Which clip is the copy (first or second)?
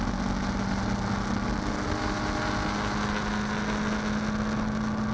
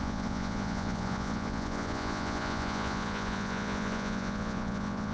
second